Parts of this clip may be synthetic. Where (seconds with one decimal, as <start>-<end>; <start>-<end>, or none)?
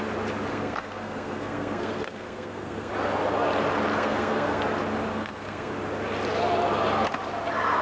0.5-2.9; 3.9-4.6; 5.1-5.7